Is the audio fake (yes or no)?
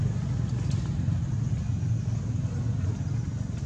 no